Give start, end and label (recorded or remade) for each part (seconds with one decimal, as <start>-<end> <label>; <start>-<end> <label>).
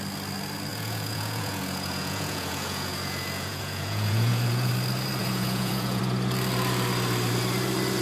0.0-0.7 recorded; 0.7-4.7 remade; 4.7-5.2 recorded; 5.2-6.0 remade; 6.0-8.0 recorded